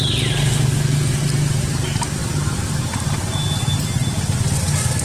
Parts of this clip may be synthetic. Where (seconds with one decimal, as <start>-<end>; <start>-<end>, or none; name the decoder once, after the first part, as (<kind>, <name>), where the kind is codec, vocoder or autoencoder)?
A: none